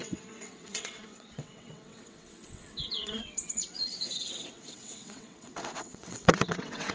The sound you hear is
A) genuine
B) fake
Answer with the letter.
B